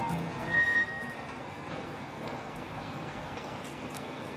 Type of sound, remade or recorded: remade